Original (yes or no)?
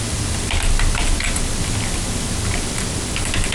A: yes